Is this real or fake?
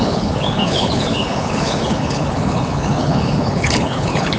fake